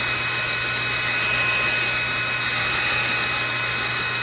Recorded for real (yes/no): yes